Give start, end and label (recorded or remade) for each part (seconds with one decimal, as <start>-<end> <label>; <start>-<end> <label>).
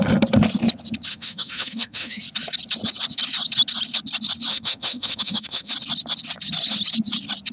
0.0-1.1 recorded; 1.1-2.2 remade; 2.2-4.5 recorded; 4.5-5.7 remade; 5.7-7.5 recorded